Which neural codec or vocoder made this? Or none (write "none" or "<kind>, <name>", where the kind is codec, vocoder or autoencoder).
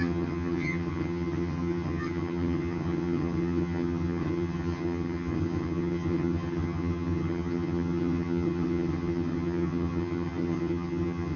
vocoder, HiFi-GAN